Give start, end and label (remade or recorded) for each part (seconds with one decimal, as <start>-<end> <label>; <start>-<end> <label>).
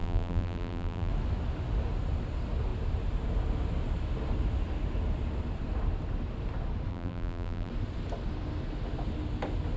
0.0-1.1 remade; 1.1-6.9 recorded; 6.9-7.7 remade; 7.7-9.8 recorded